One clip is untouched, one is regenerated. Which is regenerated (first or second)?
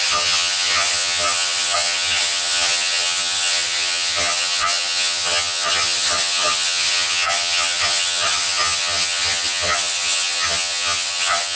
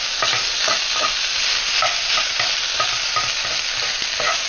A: first